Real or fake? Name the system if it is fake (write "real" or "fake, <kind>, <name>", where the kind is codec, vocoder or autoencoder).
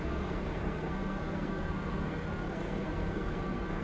fake, codec, SNAC